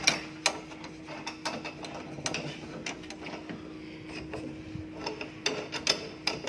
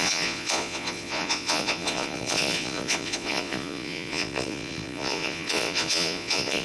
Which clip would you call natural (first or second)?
first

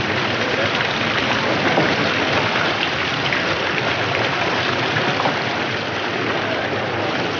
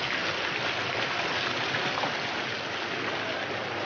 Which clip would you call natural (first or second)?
second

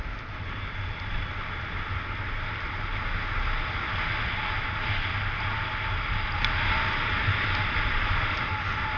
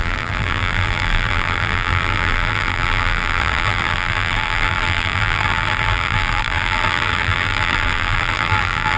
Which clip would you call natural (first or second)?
first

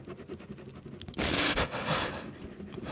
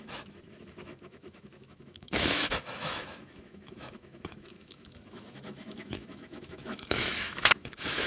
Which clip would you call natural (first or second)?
first